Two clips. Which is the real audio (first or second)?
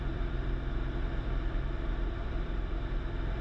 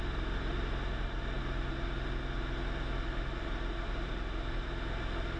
second